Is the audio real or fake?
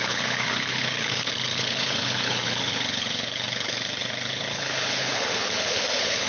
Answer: fake